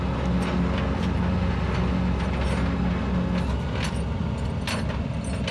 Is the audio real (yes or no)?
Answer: yes